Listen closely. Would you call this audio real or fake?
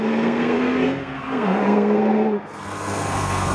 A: fake